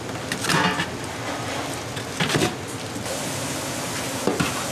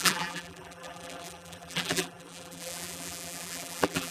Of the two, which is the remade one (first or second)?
second